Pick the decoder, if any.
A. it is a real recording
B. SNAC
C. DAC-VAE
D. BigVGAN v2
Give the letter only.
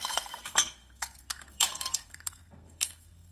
B